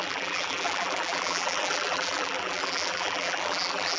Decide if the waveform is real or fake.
fake